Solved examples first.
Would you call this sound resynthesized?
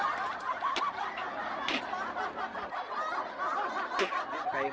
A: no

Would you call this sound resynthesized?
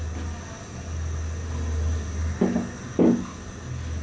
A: no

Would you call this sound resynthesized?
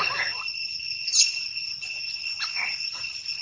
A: no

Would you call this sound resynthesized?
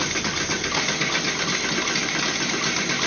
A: no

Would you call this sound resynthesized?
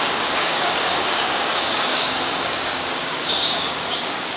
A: yes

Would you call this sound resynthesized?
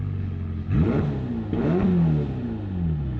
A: no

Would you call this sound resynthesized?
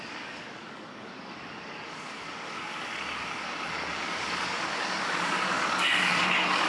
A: yes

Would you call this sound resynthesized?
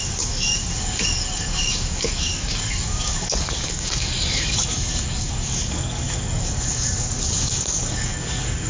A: yes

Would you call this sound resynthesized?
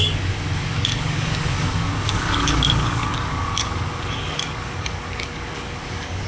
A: yes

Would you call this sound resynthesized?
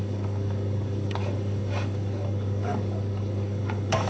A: yes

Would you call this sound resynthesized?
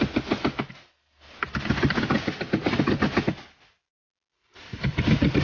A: no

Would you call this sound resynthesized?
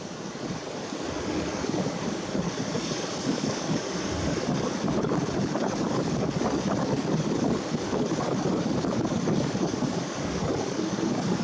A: yes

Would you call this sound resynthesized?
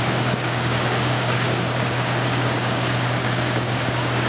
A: yes